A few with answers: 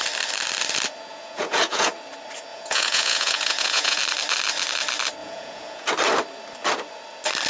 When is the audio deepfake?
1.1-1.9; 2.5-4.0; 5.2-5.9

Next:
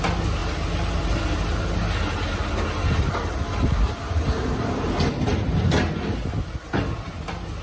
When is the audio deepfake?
none

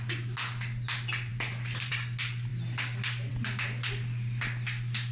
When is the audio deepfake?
none

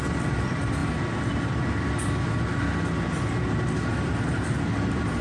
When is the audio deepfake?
0.0-0.8; 3.9-5.2

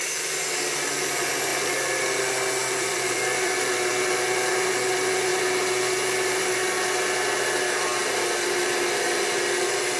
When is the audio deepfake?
2.6-3.9